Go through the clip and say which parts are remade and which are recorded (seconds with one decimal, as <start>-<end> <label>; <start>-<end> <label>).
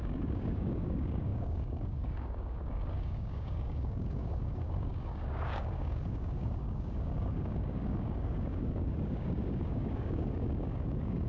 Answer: 0.0-11.3 remade